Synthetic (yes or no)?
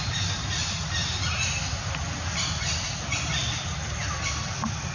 yes